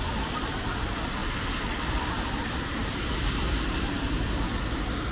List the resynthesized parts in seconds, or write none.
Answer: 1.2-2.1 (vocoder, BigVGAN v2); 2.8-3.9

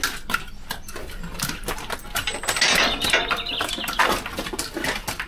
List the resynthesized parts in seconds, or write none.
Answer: none

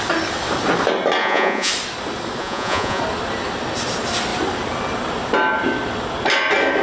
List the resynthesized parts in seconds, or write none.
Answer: 1.2-1.7 (vocoder, Vocos); 2.4-3.0